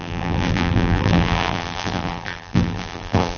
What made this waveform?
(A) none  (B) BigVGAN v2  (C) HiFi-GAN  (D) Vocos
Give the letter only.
B